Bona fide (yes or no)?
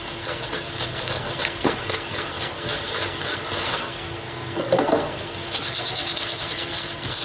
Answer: no